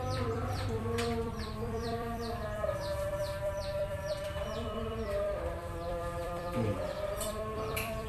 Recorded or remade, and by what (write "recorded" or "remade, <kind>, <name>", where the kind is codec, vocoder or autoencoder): remade, vocoder, BigVGAN v2